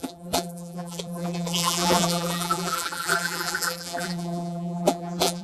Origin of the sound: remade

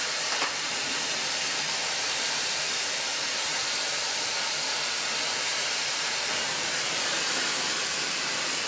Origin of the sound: remade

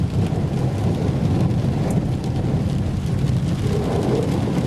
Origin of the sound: recorded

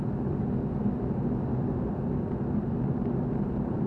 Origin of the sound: recorded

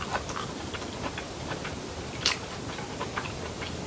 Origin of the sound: recorded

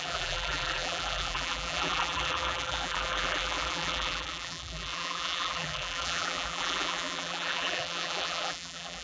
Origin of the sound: remade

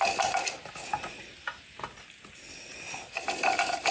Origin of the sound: recorded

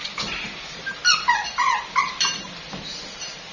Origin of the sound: remade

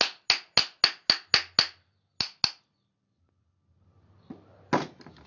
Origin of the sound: recorded